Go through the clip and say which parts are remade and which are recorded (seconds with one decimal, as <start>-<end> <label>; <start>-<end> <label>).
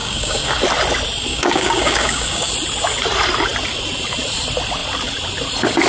0.0-0.6 remade; 0.6-1.3 recorded; 1.3-2.5 remade; 2.5-5.9 recorded